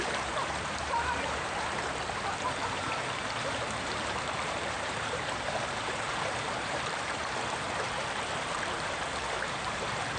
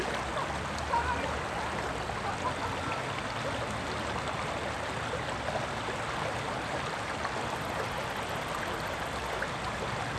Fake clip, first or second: first